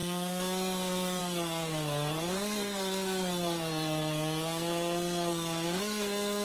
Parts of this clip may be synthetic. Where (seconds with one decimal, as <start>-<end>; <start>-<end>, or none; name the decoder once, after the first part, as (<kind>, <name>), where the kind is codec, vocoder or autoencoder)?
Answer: 0.0-6.4 (codec, SNAC)